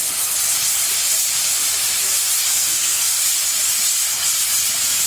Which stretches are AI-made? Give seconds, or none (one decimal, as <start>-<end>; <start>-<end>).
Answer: 2.5-3.2